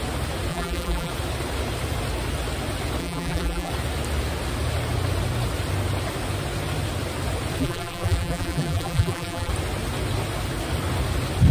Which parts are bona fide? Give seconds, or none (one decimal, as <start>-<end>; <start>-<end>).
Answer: 0.0-0.5; 1.1-3.0; 3.7-7.6; 9.5-11.5